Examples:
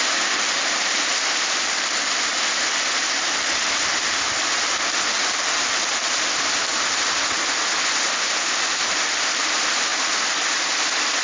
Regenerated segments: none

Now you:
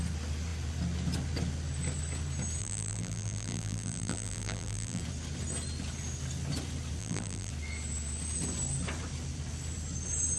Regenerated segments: 2.6-5.0 (vocoder, BigVGAN v2); 7.0-7.5